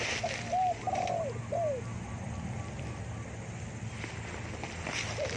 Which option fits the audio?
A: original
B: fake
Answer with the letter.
A